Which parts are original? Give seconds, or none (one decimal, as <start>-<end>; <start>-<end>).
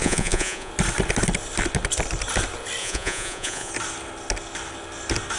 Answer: 0.7-2.8; 3.7-5.4